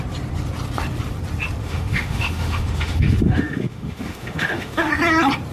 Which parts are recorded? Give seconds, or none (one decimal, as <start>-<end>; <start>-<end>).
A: 0.0-1.6; 4.9-5.5